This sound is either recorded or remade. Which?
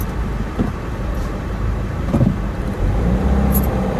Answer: remade